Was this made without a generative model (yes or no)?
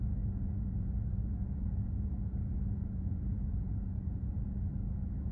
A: no